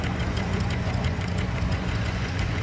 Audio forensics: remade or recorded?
remade